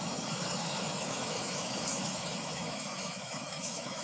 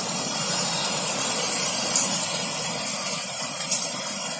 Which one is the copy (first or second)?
first